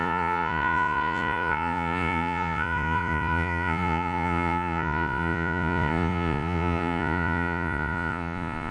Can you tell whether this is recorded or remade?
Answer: remade